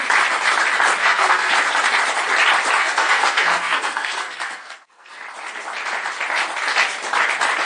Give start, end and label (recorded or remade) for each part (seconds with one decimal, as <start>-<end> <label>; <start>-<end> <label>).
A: 0.0-1.0 recorded; 1.0-1.6 remade; 1.6-2.8 recorded; 2.8-5.2 remade; 5.2-7.6 recorded